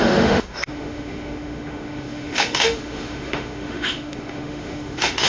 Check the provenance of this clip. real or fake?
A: fake